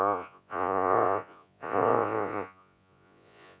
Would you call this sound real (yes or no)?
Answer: no